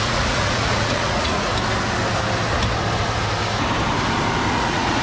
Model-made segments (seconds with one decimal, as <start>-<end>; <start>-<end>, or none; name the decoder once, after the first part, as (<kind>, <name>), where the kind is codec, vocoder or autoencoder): 0.0-1.5 (vocoder, Vocos); 4.5-5.0